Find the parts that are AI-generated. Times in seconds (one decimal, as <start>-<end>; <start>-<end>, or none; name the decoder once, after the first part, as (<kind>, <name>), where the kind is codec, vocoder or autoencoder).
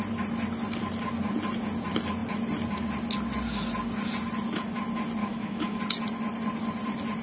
5.2-5.8 (autoencoder, DAC-VAE)